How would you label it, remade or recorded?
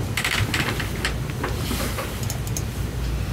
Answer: recorded